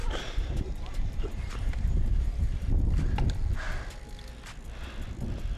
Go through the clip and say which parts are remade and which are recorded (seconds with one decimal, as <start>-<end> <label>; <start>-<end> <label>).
0.0-2.7 remade; 2.7-5.6 recorded